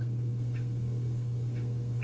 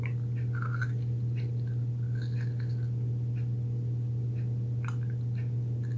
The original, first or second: second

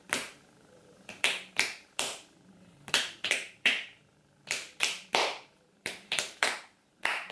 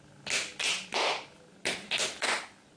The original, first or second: second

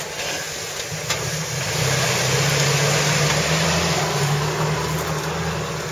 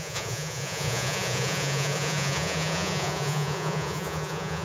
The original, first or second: first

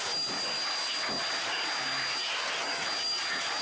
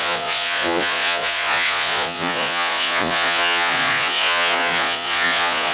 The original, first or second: first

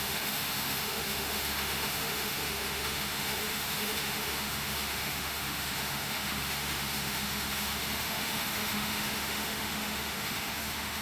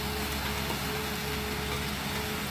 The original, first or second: second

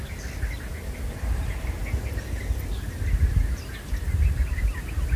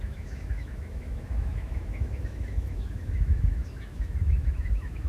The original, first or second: first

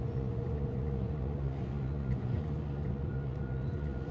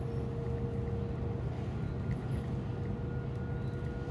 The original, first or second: second